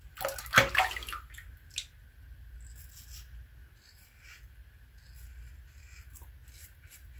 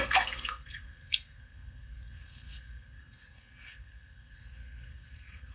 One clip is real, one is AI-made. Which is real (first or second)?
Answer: first